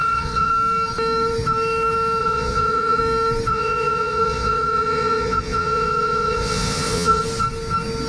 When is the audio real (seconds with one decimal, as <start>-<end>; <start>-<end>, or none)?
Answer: 0.5-2.2; 3.0-3.5; 7.2-8.1